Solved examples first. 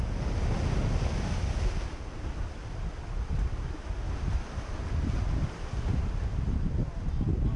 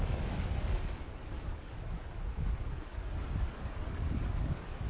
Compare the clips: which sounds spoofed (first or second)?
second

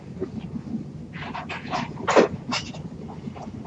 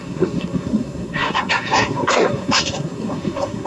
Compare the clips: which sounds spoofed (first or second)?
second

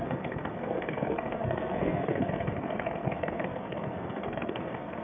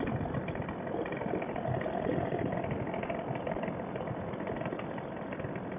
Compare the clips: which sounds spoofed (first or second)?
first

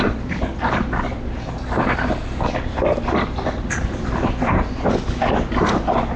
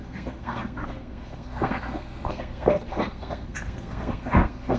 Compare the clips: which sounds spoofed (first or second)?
second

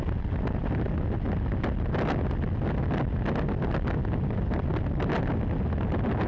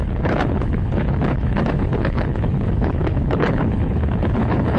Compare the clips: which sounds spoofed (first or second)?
second